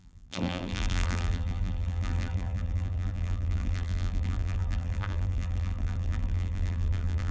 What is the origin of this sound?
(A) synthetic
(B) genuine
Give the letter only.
A